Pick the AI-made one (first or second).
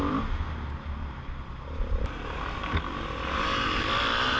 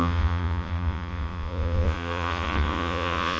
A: second